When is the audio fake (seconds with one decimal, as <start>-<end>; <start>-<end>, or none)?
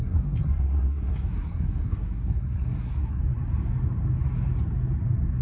0.0-3.2